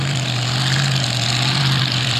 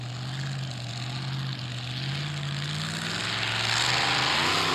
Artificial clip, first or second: first